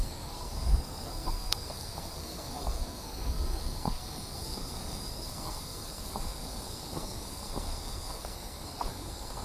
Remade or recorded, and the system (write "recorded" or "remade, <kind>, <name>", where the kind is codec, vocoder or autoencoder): remade, codec, SNAC